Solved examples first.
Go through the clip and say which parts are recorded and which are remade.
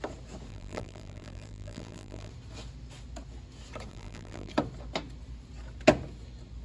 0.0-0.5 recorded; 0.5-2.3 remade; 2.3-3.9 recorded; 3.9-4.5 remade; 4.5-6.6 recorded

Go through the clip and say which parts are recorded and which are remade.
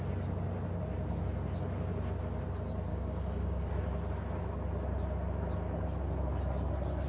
0.0-2.9 recorded; 2.9-3.7 remade; 3.7-7.1 recorded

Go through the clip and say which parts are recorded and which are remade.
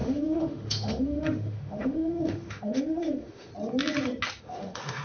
0.0-3.5 remade; 3.5-4.4 recorded; 4.4-5.0 remade